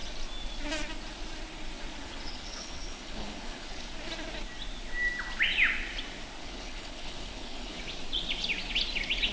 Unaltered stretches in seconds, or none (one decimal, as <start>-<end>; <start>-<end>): 0.0-2.0; 3.9-6.4; 7.8-9.3